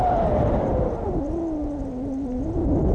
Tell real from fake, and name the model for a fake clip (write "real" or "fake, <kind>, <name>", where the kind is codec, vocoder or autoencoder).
real